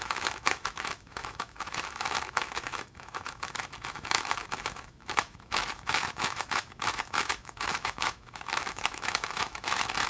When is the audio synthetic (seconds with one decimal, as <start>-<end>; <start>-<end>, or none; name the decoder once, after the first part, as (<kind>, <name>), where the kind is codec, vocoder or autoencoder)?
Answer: 0.0-10.1 (autoencoder, DAC-VAE)